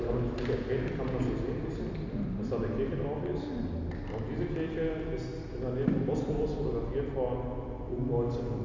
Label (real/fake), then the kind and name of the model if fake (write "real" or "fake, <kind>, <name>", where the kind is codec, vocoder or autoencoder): real